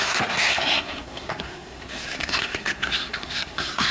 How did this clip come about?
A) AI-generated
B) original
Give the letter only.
A